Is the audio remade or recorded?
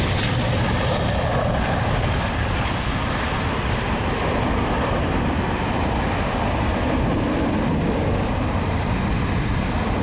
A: recorded